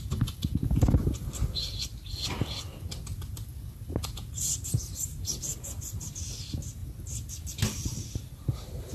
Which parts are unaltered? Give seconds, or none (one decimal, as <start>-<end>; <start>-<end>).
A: 0.0-8.9